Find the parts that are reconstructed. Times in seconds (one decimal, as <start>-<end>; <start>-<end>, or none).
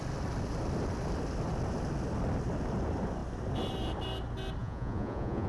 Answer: 4.6-5.5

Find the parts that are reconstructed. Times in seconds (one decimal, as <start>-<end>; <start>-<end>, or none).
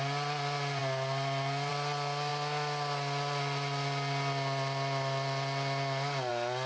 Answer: none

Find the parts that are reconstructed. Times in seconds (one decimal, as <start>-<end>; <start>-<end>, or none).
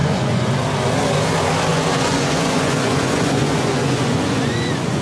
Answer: 0.0-0.5; 1.7-5.0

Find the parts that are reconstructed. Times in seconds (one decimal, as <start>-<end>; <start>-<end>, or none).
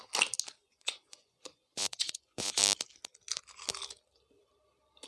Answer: 0.6-2.6